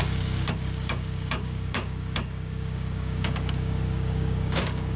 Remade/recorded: remade